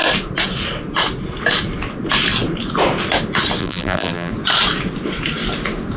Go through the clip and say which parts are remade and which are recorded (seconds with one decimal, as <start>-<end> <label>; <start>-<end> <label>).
0.0-3.6 recorded; 3.6-4.3 remade; 4.3-6.0 recorded